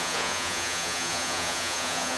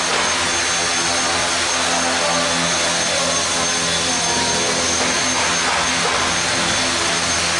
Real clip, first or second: second